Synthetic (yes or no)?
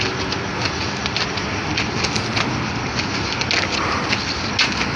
no